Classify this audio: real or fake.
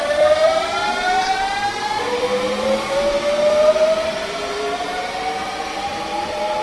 fake